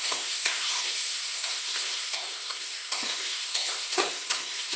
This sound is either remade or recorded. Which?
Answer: remade